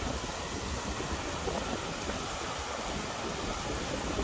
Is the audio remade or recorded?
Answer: recorded